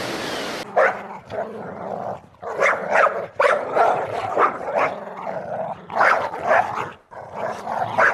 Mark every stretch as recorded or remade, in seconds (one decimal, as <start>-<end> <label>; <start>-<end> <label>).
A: 0.0-2.8 recorded; 2.8-6.2 remade; 6.2-6.9 recorded; 6.9-7.6 remade; 7.6-8.1 recorded